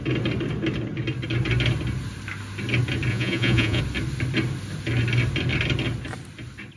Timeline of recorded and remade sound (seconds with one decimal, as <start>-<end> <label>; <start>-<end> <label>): 0.0-3.1 recorded; 3.1-3.8 remade; 3.8-6.8 recorded